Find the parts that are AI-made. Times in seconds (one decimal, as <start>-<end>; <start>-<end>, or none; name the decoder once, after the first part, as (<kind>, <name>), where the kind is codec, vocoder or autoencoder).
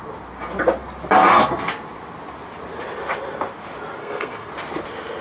4.0-4.5 (codec, SNAC)